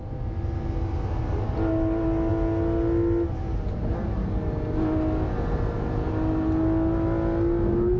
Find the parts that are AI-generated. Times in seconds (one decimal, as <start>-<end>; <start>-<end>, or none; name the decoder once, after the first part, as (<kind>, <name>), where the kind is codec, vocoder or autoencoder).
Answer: none